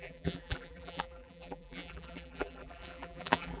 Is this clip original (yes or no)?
no